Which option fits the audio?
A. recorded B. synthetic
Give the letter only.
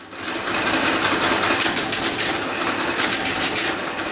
A